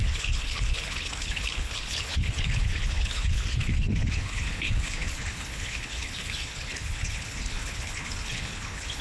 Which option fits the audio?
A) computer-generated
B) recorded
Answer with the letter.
A